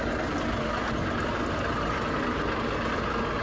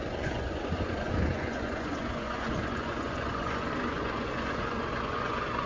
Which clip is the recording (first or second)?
first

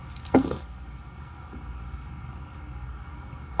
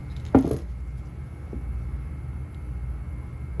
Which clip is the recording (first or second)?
second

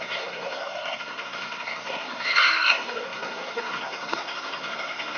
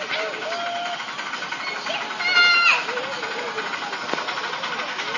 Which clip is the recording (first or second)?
second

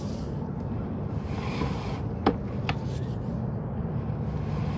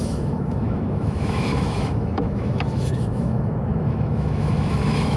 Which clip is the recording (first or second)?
first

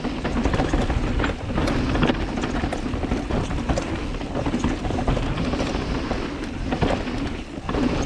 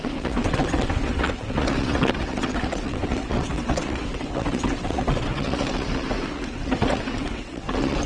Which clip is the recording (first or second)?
first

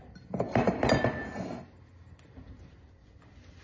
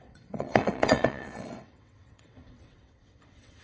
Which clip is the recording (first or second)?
first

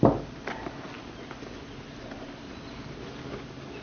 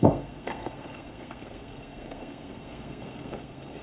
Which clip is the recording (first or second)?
first